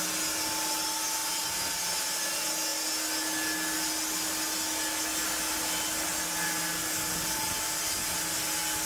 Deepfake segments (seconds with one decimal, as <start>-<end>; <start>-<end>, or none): none